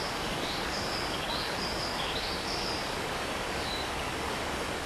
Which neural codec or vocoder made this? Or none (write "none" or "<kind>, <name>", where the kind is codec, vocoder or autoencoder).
codec, DAC